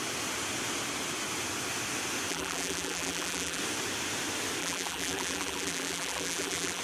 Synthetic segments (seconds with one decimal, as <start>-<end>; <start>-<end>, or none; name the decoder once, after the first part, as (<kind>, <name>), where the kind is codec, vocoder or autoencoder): 2.3-3.6 (vocoder, BigVGAN v2); 4.6-6.8